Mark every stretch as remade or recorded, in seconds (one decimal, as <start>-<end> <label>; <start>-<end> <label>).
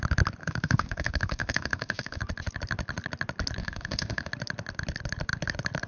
0.0-0.4 recorded; 0.4-2.2 remade; 2.2-3.6 recorded; 3.6-4.3 remade; 4.3-5.9 recorded